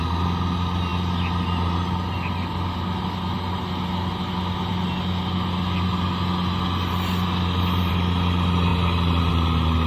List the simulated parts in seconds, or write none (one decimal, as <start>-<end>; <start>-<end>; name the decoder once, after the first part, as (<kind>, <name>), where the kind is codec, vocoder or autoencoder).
none

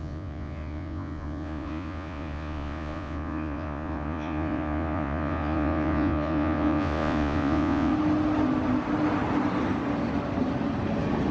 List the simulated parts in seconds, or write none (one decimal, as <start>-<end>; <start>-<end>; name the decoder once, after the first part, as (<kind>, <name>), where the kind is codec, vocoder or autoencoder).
0.0-7.9 (vocoder, Vocos)

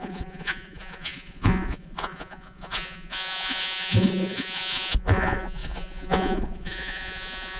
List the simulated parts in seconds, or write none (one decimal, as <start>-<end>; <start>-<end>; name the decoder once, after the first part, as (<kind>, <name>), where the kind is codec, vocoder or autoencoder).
0.0-7.6 (vocoder, Vocos)

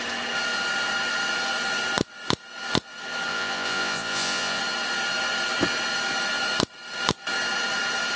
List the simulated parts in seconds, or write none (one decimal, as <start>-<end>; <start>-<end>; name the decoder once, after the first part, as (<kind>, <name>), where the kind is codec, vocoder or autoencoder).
3.3-4.6 (vocoder, Vocos)